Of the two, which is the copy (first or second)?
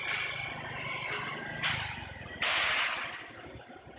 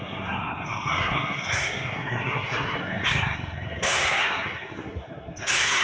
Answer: second